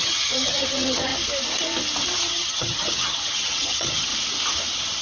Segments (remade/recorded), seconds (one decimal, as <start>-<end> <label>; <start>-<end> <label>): 0.0-1.1 remade; 1.1-2.2 recorded; 2.2-4.1 remade; 4.1-5.0 recorded